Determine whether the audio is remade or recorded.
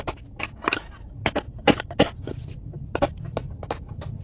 recorded